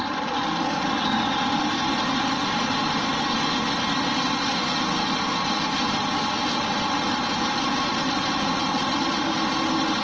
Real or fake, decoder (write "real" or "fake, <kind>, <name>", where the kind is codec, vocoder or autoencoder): real